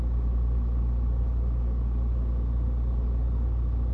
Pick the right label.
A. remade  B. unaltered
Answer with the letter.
B